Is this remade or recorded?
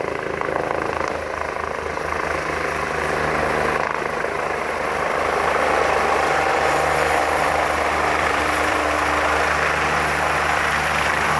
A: remade